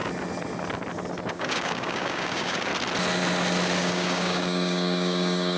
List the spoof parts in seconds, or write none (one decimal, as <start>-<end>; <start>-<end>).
1.3-2.7; 3.8-5.6